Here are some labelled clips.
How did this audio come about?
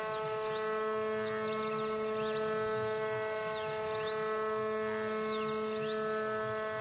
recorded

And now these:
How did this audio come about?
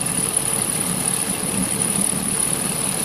remade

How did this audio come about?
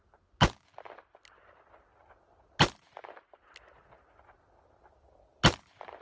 recorded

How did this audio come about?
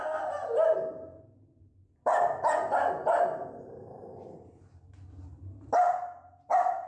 recorded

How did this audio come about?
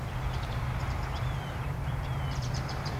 remade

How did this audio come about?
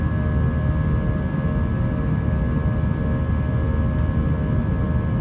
recorded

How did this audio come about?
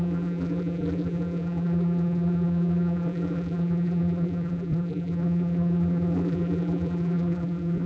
remade